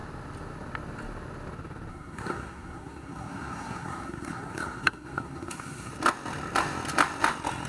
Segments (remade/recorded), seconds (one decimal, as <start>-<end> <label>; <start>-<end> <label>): 0.0-1.9 recorded; 1.9-5.9 remade; 5.9-7.7 recorded